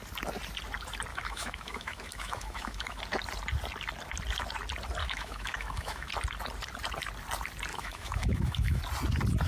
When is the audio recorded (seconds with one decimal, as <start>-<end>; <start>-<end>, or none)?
0.0-1.1; 3.0-5.0; 6.1-7.7; 8.8-9.5